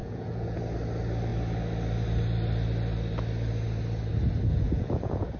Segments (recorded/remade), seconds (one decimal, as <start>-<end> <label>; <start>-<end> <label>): 0.0-0.6 remade; 0.6-4.5 recorded; 4.5-5.4 remade